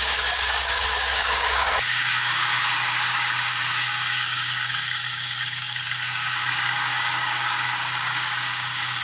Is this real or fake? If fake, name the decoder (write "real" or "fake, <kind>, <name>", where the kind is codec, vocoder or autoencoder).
fake, codec, DAC